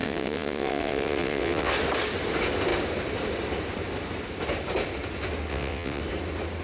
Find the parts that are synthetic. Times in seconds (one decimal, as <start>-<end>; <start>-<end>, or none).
0.0-1.7; 5.5-6.0